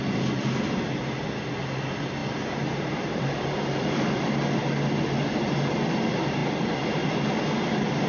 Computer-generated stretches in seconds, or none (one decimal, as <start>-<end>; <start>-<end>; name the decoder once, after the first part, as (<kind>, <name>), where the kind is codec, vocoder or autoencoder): none